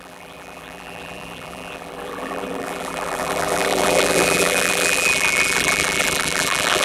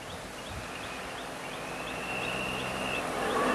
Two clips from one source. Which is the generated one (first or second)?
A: first